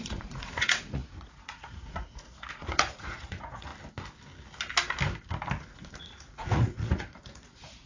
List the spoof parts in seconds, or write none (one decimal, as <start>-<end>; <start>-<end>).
0.0-3.7; 6.0-7.9